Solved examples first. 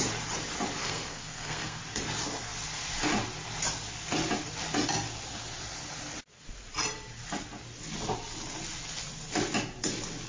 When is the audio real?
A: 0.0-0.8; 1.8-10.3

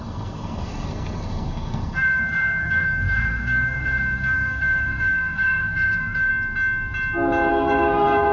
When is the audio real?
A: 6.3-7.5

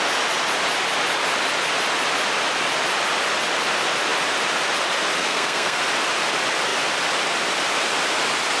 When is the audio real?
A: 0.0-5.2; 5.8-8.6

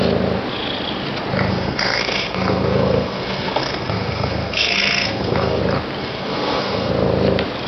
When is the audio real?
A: 0.0-1.5; 5.6-6.0; 6.9-7.7